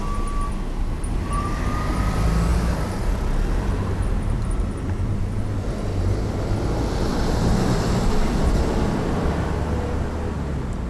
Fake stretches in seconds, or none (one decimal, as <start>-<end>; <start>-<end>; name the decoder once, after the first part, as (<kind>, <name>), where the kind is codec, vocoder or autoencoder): 2.5-5.1 (vocoder, BigVGAN v2); 7.1-8.8